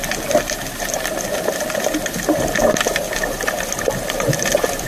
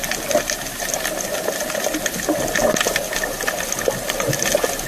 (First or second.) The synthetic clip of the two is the first